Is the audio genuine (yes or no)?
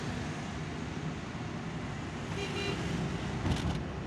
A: yes